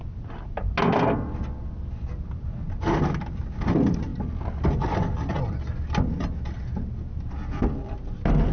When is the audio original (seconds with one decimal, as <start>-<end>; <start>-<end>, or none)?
0.0-8.5